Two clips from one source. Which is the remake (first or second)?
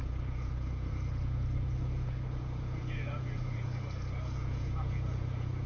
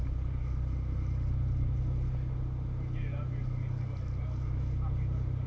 first